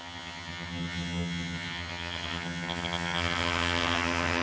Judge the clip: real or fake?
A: fake